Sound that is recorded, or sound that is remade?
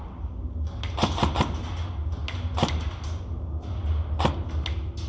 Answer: recorded